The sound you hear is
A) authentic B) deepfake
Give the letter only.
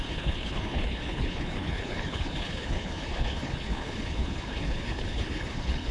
B